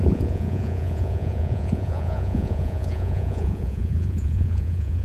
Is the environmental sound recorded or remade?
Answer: remade